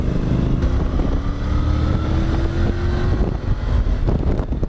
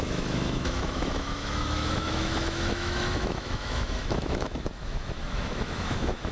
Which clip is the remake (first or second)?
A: second